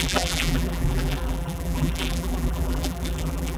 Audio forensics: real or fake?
fake